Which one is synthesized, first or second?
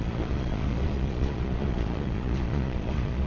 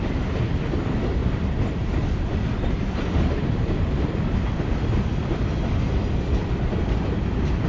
first